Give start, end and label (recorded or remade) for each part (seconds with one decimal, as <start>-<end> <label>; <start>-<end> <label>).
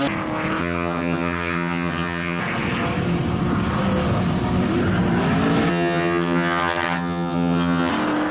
0.0-0.6 recorded; 0.6-2.4 remade; 2.4-5.7 recorded; 5.7-7.9 remade; 7.9-8.3 recorded